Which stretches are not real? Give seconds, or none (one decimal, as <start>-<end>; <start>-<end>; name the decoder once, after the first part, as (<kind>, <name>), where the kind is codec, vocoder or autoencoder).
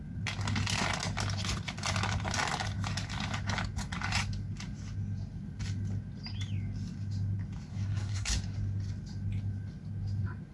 7.7-8.3 (codec, SNAC)